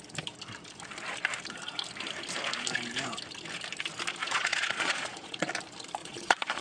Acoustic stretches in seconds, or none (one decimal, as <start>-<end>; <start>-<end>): 0.0-4.2; 5.5-6.0